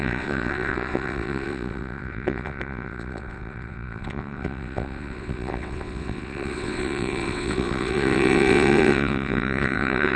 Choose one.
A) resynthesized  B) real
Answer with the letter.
A